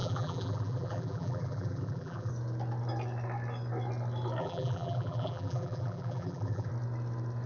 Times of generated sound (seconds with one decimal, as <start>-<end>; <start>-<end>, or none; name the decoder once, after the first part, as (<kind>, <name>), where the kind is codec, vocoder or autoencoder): 0.0-2.3 (vocoder, BigVGAN v2); 4.4-6.7

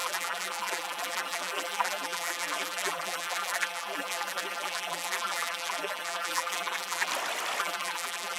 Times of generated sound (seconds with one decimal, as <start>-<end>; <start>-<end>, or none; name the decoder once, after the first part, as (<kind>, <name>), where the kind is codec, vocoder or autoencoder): 0.0-7.1 (vocoder, BigVGAN v2); 7.6-8.4

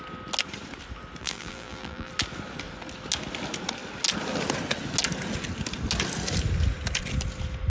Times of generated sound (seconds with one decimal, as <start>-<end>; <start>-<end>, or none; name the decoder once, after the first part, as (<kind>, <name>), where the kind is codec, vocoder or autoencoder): 1.2-2.1 (vocoder, BigVGAN v2)

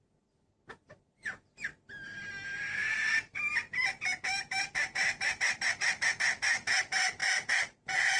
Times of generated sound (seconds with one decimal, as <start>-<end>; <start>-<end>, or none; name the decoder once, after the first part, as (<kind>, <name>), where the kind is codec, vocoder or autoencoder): 2.8-6.2 (vocoder, BigVGAN v2); 7.2-8.2

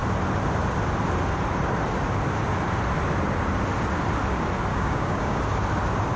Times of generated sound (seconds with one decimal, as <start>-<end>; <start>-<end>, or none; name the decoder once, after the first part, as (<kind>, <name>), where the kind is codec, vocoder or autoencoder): 4.7-5.4 (codec, DAC)

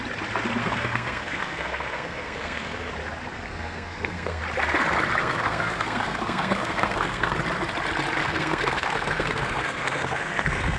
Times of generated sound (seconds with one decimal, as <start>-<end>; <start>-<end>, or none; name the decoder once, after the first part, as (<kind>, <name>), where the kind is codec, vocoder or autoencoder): 0.6-2.9 (codec, SNAC); 3.3-4.4; 5.2-7.4; 8.2-10.8